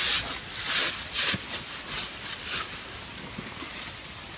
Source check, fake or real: real